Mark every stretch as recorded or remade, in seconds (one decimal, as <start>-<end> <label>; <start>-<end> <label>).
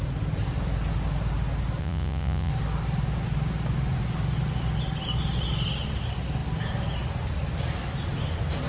0.0-1.8 recorded; 1.8-2.5 remade; 2.5-8.7 recorded